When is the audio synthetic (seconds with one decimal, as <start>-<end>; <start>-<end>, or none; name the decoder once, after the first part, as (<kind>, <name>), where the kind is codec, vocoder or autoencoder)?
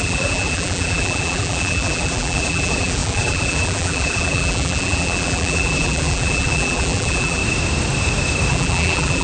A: 0.0-7.4 (vocoder, BigVGAN v2); 8.5-9.2